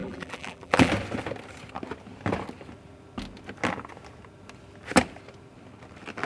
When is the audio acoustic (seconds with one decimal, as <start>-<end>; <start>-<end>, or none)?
0.9-6.3